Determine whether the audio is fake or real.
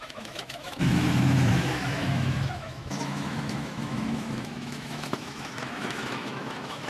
fake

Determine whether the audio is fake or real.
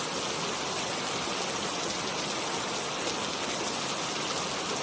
real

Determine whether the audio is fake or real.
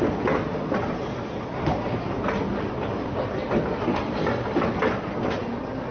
real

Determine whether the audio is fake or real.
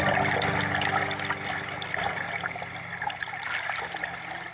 real